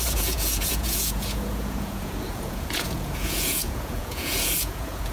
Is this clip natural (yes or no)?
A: no